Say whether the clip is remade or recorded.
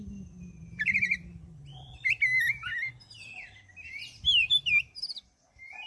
recorded